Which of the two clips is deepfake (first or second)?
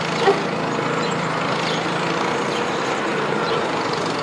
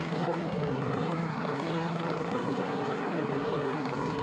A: second